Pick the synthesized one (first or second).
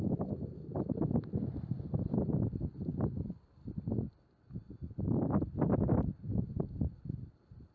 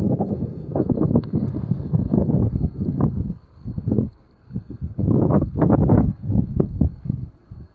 second